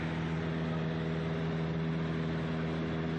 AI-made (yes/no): no